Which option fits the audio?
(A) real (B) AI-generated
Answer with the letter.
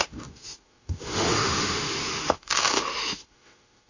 B